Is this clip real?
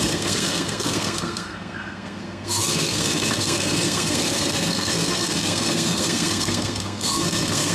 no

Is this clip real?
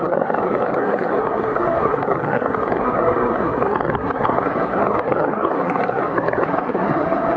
no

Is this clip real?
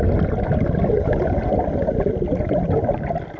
yes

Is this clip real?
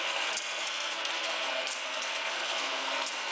no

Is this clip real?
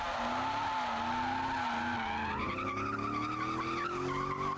yes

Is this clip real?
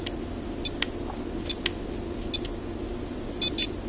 yes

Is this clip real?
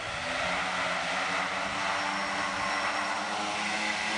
yes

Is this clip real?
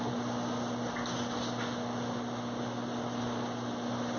yes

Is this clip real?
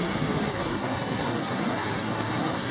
no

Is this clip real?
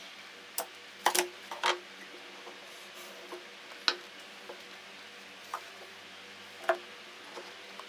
yes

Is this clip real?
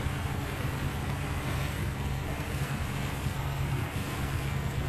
no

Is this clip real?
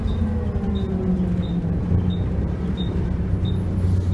yes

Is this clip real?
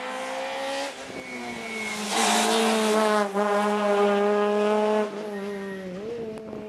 yes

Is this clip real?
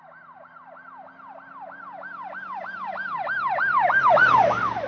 yes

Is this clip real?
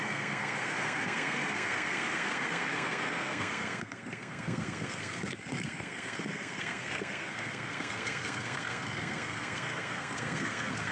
no